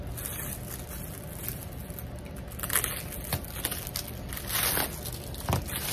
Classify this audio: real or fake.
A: real